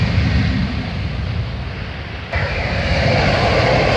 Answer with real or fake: real